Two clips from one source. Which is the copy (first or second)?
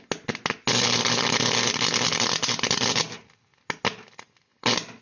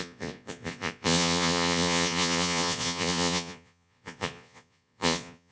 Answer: second